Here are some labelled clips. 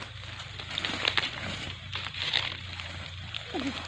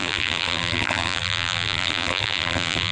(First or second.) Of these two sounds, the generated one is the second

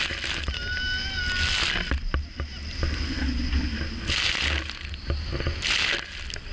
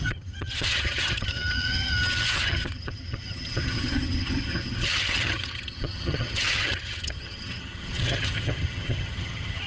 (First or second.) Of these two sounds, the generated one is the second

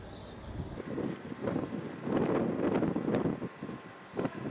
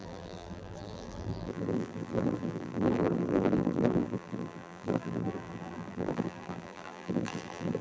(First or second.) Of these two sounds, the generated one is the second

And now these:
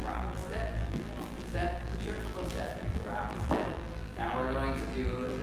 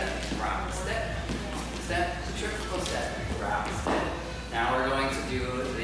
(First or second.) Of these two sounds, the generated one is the first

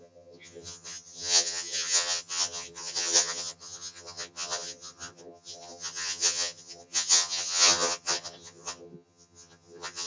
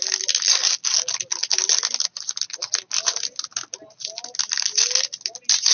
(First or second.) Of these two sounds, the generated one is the first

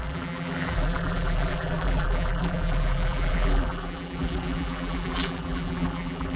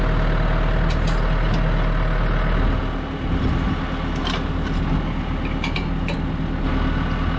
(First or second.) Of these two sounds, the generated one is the first